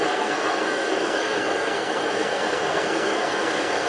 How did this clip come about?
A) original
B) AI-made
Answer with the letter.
B